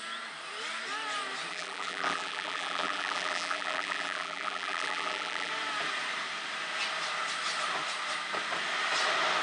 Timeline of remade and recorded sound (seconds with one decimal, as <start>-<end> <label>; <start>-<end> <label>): 0.0-1.5 recorded; 1.5-5.5 remade; 5.5-9.4 recorded